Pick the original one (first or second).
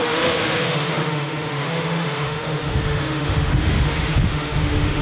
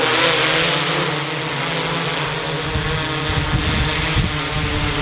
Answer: second